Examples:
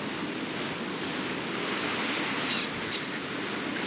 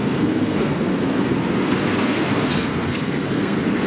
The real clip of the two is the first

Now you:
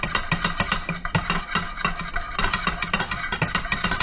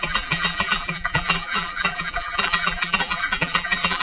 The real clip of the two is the first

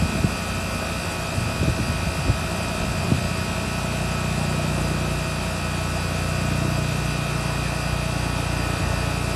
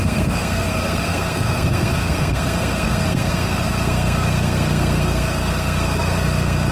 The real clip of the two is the first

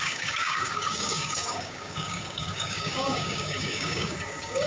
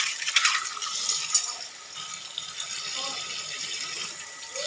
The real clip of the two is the second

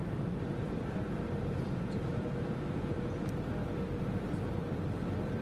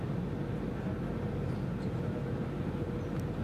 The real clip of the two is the second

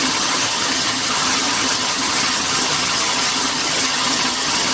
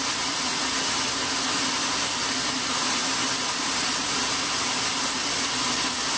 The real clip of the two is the second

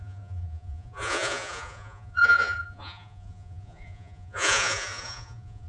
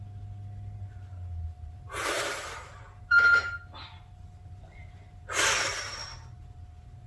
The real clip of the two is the second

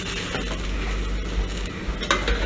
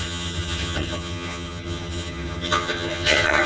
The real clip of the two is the first